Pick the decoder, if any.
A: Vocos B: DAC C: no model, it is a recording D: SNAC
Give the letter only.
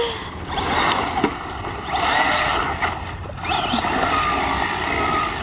C